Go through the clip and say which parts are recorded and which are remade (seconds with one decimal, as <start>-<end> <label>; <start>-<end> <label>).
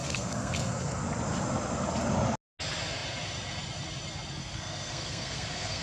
0.0-1.0 remade; 1.0-4.4 recorded; 4.4-5.8 remade